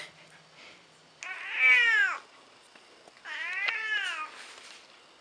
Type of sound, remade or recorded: recorded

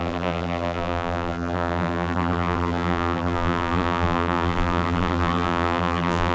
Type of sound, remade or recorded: remade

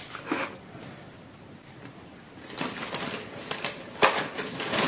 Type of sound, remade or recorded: remade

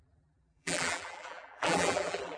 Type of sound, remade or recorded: remade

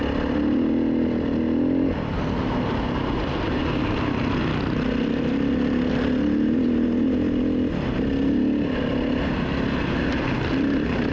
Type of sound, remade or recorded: recorded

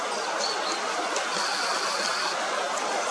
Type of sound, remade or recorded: recorded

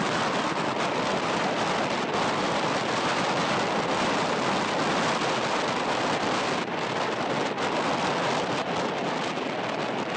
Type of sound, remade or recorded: recorded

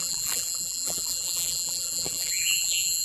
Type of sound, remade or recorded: remade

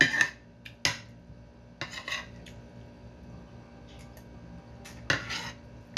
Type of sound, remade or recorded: recorded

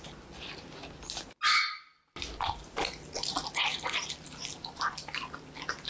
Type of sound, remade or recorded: recorded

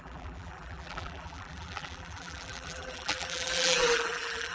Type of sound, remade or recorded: remade